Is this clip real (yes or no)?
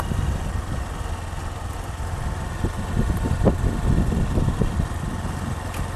yes